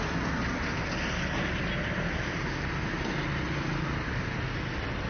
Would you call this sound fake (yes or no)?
no